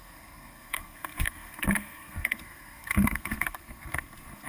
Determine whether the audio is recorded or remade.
remade